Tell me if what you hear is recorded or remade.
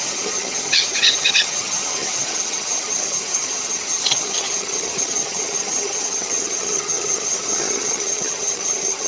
remade